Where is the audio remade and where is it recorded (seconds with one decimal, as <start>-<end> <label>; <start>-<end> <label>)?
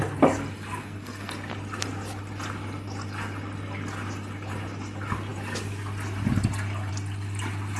0.0-0.8 recorded; 0.8-1.3 remade; 1.3-7.8 recorded